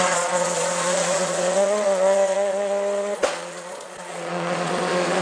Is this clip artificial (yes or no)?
yes